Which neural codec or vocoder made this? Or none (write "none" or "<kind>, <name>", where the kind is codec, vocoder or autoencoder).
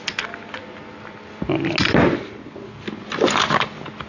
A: none